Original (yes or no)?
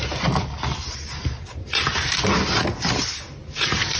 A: yes